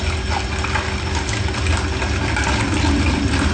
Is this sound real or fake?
real